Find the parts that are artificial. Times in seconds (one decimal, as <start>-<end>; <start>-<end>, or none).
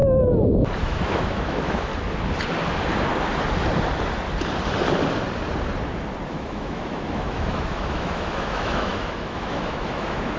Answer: 0.8-1.9; 6.3-10.4